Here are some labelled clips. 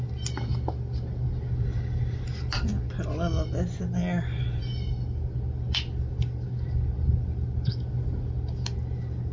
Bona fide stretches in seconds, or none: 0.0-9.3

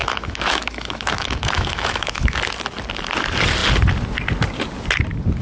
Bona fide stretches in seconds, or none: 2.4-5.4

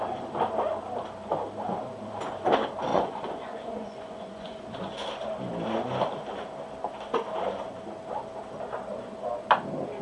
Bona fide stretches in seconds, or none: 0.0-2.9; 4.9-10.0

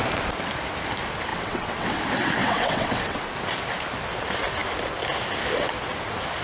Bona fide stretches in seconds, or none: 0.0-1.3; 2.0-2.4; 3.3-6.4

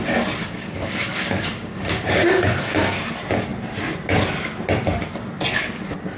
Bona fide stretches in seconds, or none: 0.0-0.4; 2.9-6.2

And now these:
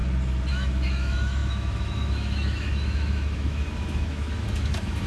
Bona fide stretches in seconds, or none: 0.0-0.5

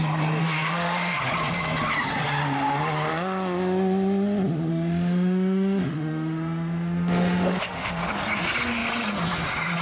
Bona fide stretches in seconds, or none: 0.0-0.4; 1.2-4.7; 8.1-9.8